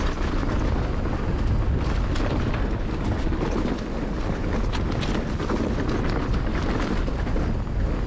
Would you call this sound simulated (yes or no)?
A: no